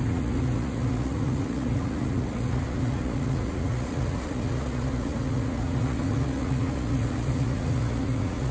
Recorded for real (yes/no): no